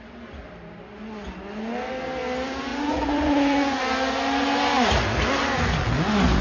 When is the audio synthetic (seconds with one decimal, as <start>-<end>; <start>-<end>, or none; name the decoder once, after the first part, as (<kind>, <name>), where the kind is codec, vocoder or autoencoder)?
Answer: 2.7-3.8 (vocoder, Vocos)